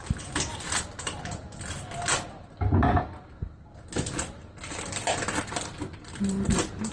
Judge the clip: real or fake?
real